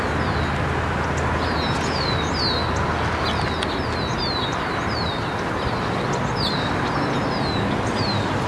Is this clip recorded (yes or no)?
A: yes